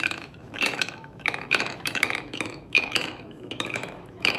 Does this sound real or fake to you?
fake